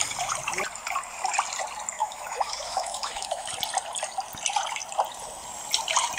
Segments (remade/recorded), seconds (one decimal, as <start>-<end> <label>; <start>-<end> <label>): 0.0-2.0 recorded; 2.0-3.5 remade; 3.5-6.2 recorded